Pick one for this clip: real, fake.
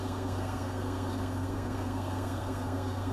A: fake